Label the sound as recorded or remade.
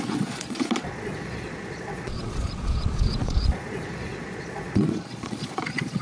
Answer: remade